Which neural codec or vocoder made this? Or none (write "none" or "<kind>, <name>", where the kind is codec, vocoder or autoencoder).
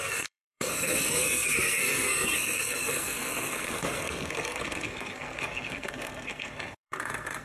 codec, SNAC